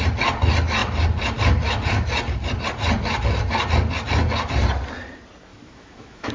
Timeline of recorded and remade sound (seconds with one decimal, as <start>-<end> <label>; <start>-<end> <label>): 0.0-5.5 recorded; 5.5-6.3 remade